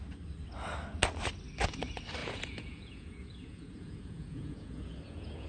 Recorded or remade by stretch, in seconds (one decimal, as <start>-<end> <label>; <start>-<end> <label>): 0.0-2.2 recorded; 2.2-5.5 remade